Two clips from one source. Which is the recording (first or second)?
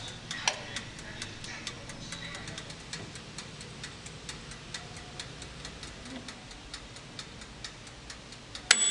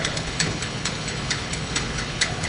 first